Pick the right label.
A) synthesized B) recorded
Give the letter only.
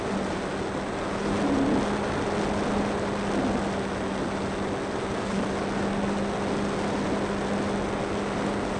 B